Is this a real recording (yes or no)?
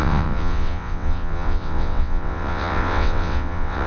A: no